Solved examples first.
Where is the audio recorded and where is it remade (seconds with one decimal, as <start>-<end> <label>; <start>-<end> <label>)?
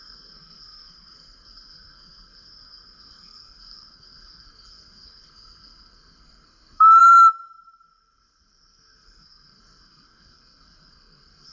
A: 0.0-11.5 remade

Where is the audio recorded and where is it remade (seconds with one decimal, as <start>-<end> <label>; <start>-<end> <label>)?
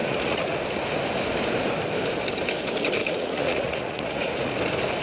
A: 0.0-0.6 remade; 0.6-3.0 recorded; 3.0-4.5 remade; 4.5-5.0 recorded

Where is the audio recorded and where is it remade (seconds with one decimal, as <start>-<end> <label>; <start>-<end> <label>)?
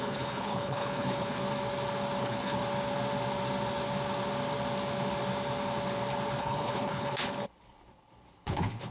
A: 0.0-1.4 remade; 1.4-2.2 recorded; 2.2-2.6 remade; 2.6-6.4 recorded; 6.4-8.9 remade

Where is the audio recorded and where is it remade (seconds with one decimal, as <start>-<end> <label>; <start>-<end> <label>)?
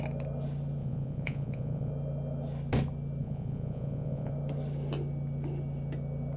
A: 0.0-0.8 recorded; 0.8-1.9 remade; 1.9-3.2 recorded; 3.2-4.3 remade; 4.3-6.4 recorded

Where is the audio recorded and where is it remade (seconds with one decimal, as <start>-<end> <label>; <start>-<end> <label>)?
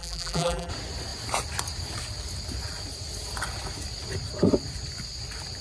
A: 0.0-0.7 remade; 0.7-5.6 recorded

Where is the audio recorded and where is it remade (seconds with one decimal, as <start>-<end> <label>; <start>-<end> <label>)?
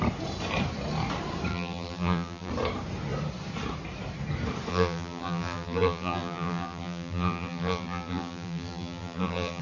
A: 0.0-1.5 recorded; 1.5-2.5 remade; 2.5-4.7 recorded; 4.7-9.6 remade